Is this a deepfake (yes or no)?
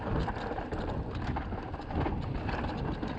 no